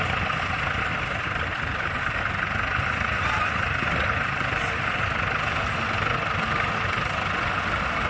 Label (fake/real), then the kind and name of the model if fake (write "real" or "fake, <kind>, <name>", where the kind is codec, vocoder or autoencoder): real